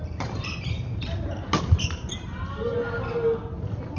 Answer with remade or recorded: recorded